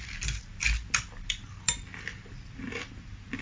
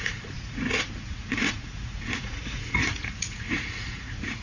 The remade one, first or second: second